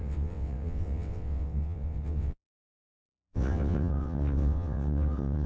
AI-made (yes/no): yes